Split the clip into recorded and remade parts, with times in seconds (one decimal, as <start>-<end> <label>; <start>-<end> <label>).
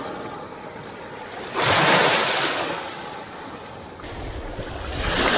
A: 0.0-5.4 recorded